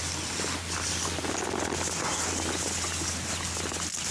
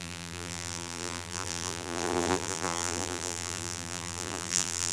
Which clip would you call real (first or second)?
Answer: first